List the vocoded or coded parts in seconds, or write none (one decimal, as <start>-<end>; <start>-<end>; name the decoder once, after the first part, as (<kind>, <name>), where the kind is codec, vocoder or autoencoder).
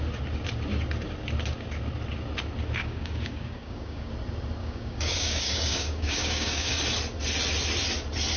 2.8-4.1 (codec, DAC); 4.6-6.7